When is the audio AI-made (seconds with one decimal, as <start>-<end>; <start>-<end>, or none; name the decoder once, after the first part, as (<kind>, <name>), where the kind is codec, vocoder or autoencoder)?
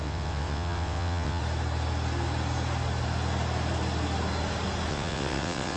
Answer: 0.0-1.4 (vocoder, WaveNeXt); 4.9-5.8